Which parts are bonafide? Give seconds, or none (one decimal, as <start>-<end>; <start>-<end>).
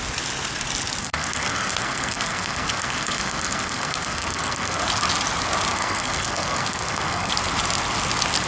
0.0-1.0; 4.8-5.7; 7.3-8.5